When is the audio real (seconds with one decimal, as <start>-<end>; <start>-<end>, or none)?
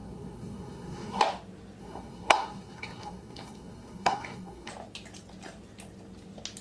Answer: 1.2-1.8; 4.7-6.6